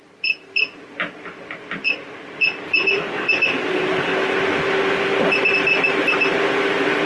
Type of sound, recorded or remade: recorded